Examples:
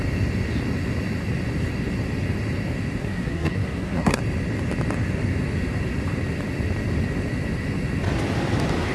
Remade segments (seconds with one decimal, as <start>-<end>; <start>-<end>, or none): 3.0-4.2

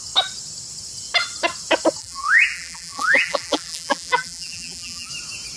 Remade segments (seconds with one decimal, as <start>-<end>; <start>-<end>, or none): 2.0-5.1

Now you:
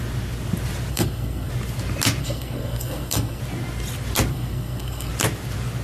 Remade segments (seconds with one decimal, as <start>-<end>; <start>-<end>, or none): 0.9-1.5; 2.2-3.4; 4.3-5.1

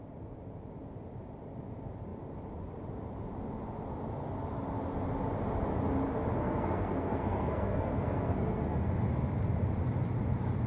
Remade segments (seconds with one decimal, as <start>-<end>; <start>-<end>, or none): 6.4-8.9